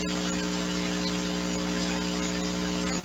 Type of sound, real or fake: real